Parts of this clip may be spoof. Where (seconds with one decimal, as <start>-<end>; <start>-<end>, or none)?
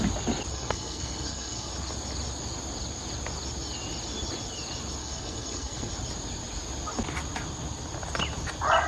0.5-1.7; 5.0-5.9